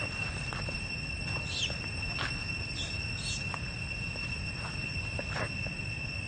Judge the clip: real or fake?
real